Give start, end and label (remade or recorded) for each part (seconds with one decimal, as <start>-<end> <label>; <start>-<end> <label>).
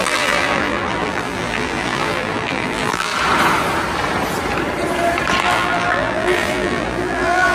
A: 0.0-3.1 remade; 3.1-5.4 recorded; 5.4-7.5 remade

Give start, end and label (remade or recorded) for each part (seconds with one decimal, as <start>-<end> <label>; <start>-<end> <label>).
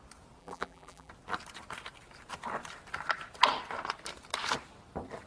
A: 0.0-0.4 recorded; 0.4-1.1 remade; 1.1-5.3 recorded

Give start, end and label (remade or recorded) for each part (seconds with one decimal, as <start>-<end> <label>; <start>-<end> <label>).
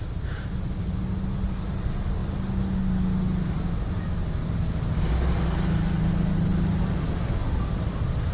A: 0.0-8.3 recorded